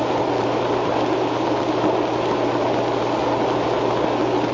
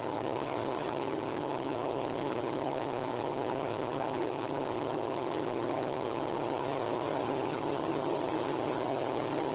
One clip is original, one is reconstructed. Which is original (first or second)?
first